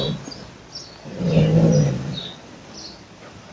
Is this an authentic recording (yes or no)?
yes